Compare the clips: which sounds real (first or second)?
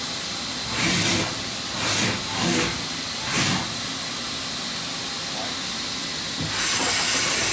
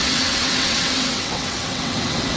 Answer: first